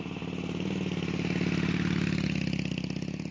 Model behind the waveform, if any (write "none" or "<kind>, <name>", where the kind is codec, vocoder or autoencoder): none